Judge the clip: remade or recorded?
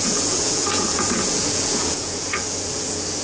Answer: remade